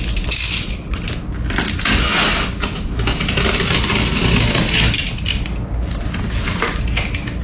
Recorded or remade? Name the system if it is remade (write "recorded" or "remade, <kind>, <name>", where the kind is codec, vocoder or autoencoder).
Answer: recorded